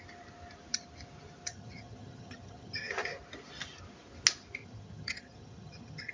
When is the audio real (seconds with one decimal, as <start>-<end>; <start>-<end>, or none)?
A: 0.0-1.5; 2.9-4.6